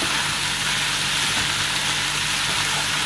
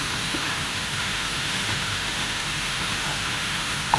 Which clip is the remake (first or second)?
second